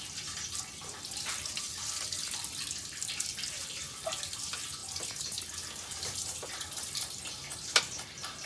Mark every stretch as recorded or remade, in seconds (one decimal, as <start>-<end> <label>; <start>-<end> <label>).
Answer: 0.0-8.5 recorded